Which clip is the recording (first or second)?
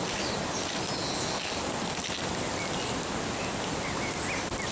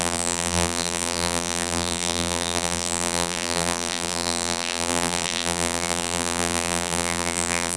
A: first